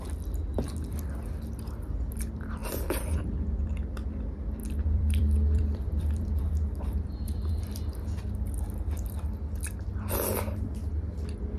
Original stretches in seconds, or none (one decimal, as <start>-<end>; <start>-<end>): 0.0-2.6; 3.2-4.6; 7.5-11.6